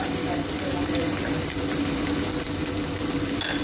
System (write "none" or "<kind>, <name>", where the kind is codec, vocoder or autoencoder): none